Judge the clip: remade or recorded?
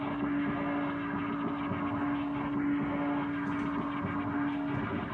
recorded